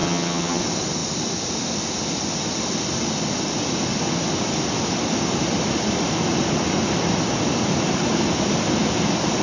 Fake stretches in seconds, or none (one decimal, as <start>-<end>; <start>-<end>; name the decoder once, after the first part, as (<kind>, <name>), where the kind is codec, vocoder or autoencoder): 0.0-0.6 (vocoder, HiFi-GAN)